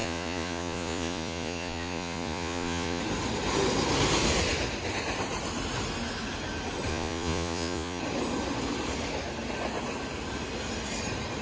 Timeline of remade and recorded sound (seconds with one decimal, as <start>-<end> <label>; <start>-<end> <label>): 0.0-3.0 remade; 3.0-6.9 recorded; 6.9-8.0 remade; 8.0-11.4 recorded